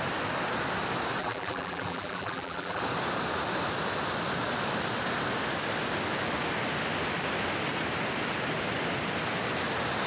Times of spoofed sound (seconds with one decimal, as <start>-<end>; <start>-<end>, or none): 1.2-2.8